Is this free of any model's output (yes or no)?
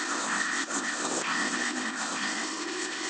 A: no